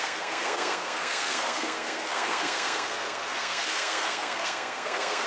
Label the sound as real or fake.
fake